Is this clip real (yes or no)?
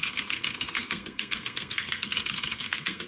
no